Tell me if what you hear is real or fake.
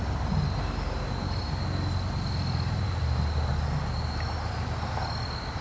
real